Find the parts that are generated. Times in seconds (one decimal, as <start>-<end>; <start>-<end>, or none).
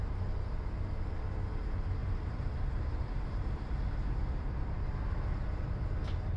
2.0-4.5